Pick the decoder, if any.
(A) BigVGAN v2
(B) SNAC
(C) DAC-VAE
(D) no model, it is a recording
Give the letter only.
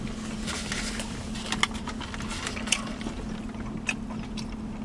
D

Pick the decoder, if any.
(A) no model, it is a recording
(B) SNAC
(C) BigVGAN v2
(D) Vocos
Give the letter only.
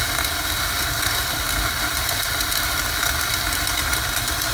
A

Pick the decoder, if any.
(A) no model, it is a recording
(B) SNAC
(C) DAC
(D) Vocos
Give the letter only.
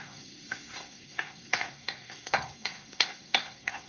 B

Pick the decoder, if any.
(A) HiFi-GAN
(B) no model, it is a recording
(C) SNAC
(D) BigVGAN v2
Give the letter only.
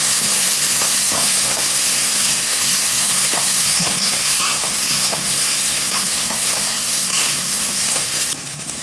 C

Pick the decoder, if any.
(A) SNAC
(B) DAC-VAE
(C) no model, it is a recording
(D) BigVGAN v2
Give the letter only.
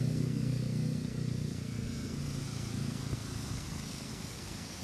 A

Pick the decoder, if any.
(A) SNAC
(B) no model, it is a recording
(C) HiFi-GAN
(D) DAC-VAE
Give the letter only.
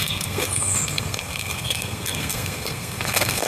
A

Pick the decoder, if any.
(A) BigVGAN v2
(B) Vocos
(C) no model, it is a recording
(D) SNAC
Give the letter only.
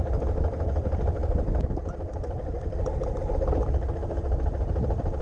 C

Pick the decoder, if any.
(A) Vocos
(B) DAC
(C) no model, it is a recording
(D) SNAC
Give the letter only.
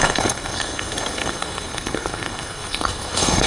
D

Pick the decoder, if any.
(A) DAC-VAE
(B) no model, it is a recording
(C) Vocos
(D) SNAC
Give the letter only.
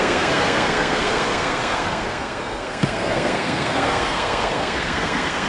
D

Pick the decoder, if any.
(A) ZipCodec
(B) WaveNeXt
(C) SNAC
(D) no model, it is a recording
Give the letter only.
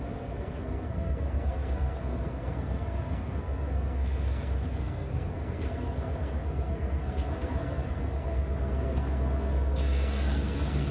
C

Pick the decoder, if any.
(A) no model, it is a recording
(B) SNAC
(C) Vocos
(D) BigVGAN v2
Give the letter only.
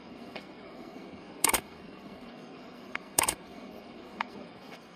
B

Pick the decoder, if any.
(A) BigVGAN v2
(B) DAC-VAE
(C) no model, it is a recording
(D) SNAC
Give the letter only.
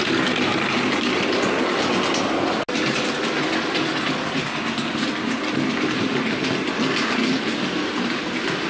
C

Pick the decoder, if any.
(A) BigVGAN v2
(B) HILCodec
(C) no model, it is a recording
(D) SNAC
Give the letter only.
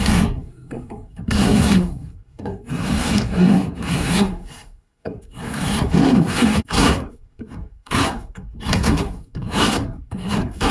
D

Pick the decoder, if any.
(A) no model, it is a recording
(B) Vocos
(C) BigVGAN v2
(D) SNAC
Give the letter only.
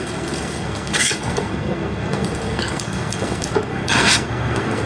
D